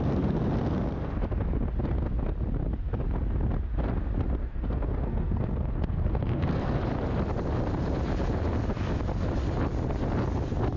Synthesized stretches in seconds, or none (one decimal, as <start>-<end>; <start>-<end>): 4.4-6.8